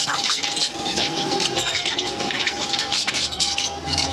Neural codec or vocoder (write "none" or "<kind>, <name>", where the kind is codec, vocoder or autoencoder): codec, SNAC